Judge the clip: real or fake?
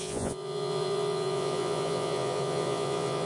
fake